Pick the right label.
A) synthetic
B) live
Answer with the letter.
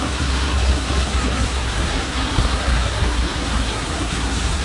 A